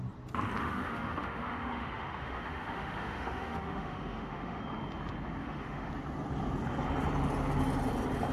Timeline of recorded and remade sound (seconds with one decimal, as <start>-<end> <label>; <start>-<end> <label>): 0.0-0.6 recorded; 0.6-4.6 remade; 4.6-5.4 recorded; 5.4-5.9 remade; 5.9-8.3 recorded

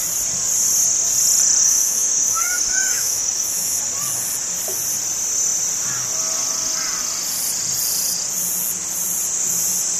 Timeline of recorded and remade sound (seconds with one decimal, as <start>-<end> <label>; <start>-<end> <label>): 0.0-1.6 recorded; 1.6-3.8 remade; 3.8-10.0 recorded

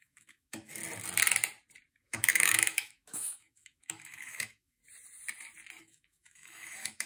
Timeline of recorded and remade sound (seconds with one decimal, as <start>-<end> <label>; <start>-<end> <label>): 0.0-0.8 remade; 0.8-1.9 recorded; 1.9-4.8 remade; 4.8-5.8 recorded; 5.8-7.1 remade

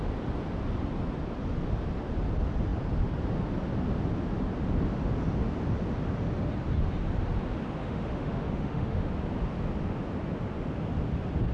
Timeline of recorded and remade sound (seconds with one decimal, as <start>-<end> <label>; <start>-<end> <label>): 0.0-7.8 recorded; 7.8-9.1 remade; 9.1-11.5 recorded

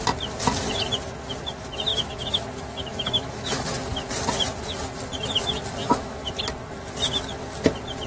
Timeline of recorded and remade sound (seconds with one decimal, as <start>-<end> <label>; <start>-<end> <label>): 0.0-1.9 recorded; 1.9-2.4 remade; 2.4-2.9 recorded; 2.9-3.8 remade; 3.8-5.8 recorded; 5.8-6.4 remade; 6.4-8.1 recorded

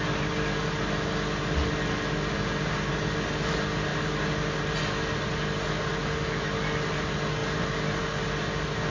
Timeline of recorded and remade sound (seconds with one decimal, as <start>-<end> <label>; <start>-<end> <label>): 0.0-6.0 recorded; 6.0-6.6 remade; 6.6-8.9 recorded